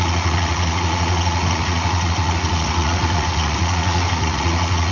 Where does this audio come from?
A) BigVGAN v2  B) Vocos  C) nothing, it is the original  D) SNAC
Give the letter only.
B